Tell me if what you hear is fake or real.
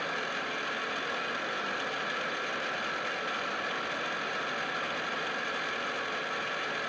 real